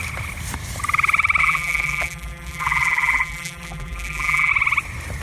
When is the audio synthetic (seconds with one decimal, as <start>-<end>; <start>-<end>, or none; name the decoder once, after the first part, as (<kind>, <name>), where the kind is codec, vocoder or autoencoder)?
1.4-4.5 (vocoder, BigVGAN v2)